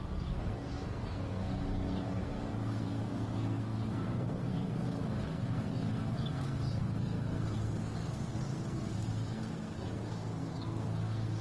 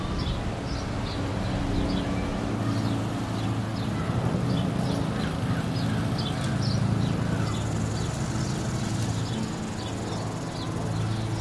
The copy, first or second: first